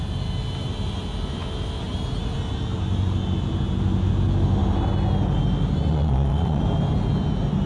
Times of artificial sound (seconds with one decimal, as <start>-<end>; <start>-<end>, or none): 5.9-6.6